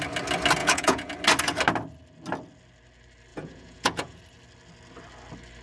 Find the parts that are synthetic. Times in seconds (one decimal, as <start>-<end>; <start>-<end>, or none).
0.6-1.1; 3.3-4.2